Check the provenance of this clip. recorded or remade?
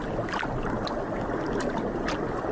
recorded